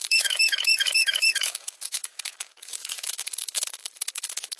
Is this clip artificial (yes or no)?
yes